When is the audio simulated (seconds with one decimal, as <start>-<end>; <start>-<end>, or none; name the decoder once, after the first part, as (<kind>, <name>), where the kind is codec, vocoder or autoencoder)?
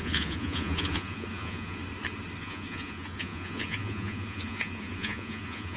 0.0-1.8 (vocoder, Vocos); 2.4-5.8